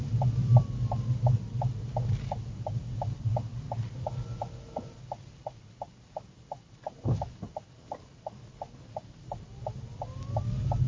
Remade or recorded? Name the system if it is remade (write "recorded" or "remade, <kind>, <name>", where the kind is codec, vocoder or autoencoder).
recorded